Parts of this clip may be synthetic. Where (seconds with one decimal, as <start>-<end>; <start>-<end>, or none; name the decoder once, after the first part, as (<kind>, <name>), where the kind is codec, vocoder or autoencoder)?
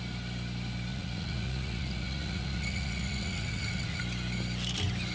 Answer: 0.9-4.0 (vocoder, Vocos)